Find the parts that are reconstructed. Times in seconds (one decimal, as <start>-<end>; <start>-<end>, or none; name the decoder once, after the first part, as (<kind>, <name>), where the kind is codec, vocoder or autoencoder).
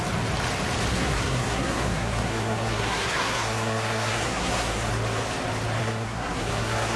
0.9-4.9 (codec, SNAC); 5.8-7.0